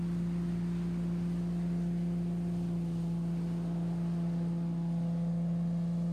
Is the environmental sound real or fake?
real